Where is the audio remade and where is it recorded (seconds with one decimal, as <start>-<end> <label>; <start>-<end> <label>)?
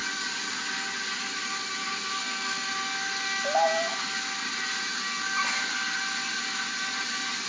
0.0-2.2 recorded; 2.2-2.7 remade; 2.7-7.5 recorded